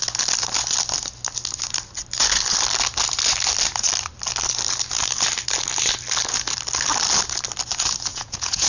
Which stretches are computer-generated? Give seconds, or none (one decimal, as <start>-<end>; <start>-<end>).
8.1-8.7